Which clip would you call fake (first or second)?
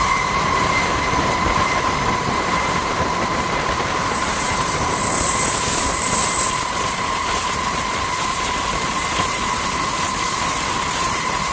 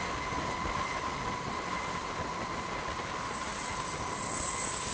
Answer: first